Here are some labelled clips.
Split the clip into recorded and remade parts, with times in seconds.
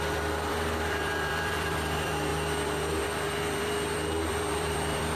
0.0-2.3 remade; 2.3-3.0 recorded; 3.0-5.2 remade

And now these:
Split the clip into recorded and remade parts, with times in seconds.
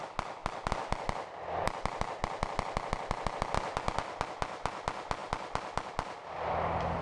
0.0-7.0 recorded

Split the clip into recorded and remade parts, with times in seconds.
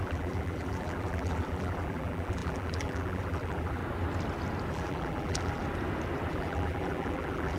0.0-3.8 remade; 3.8-4.7 recorded; 4.7-5.6 remade; 5.6-6.3 recorded; 6.3-7.6 remade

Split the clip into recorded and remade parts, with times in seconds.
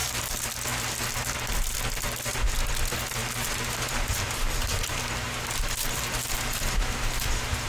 0.0-0.5 remade; 0.5-3.2 recorded; 3.2-7.7 remade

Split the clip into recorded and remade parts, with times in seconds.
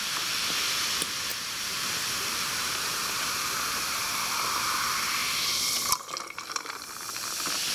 0.0-1.3 recorded; 1.3-3.2 remade; 3.2-7.7 recorded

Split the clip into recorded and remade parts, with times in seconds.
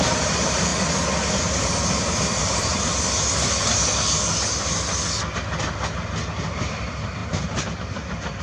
0.0-0.7 remade; 0.7-1.3 recorded; 1.3-2.7 remade; 2.7-6.5 recorded; 6.5-8.4 remade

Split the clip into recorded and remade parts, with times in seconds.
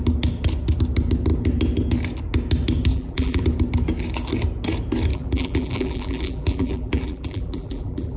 0.0-2.9 recorded; 2.9-3.4 remade; 3.4-5.1 recorded; 5.1-8.2 remade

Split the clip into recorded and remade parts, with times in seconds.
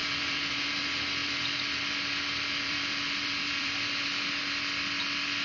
0.0-0.7 remade; 0.7-1.2 recorded; 1.2-4.4 remade; 4.4-5.4 recorded